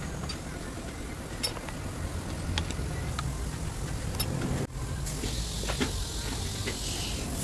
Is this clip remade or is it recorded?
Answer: recorded